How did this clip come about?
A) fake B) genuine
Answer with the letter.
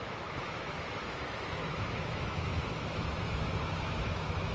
A